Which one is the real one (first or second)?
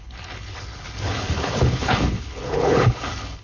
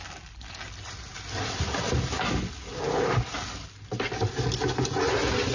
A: second